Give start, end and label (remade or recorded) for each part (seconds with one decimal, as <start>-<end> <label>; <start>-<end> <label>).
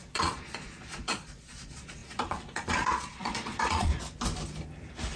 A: 0.0-3.9 remade; 3.9-5.2 recorded